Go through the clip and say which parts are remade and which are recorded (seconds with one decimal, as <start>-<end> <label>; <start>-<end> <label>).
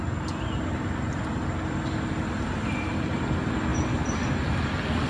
0.0-5.1 recorded